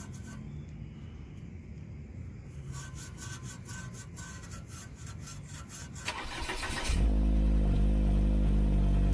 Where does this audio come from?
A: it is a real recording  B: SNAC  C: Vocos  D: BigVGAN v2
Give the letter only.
A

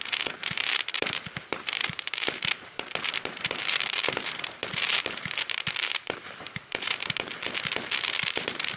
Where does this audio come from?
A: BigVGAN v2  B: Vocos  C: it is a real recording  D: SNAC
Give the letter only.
A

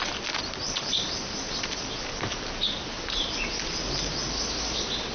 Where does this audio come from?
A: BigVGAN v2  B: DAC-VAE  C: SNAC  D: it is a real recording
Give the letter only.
D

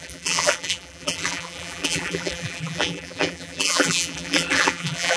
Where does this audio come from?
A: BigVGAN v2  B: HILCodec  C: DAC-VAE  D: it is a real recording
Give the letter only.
A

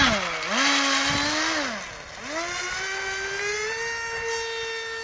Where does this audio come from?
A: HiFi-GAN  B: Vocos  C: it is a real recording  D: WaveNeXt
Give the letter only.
C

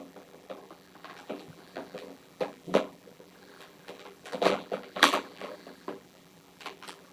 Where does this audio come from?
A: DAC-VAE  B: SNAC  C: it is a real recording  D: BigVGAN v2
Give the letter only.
D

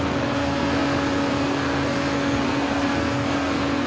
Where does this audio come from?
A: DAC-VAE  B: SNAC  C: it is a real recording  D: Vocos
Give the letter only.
B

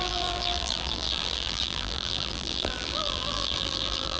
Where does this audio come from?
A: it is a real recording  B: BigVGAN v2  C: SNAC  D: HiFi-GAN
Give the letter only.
B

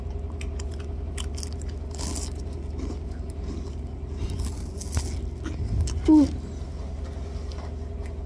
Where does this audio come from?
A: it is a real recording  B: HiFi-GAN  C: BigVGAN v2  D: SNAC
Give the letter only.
A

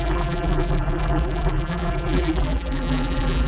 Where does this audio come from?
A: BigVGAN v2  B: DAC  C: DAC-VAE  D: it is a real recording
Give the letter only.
A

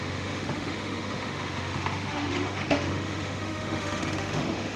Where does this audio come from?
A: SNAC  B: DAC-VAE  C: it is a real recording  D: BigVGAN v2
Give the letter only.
B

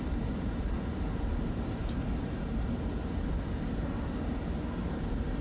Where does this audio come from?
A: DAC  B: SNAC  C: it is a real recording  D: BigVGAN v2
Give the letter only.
D